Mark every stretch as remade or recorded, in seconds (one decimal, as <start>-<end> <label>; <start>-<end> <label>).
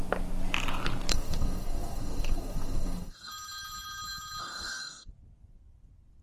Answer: 0.0-1.1 recorded; 1.1-3.3 remade; 3.3-4.4 recorded; 4.4-5.1 remade; 5.1-6.2 recorded